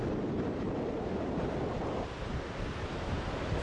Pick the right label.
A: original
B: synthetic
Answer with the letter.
B